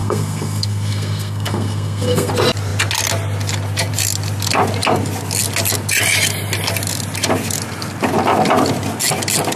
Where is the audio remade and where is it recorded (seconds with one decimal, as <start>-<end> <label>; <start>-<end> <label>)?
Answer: 0.0-2.3 remade; 2.3-9.6 recorded